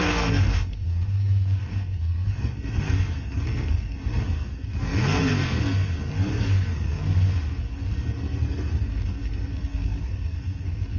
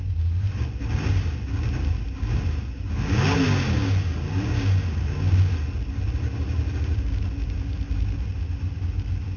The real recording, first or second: second